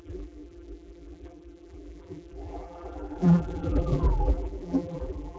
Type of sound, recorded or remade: remade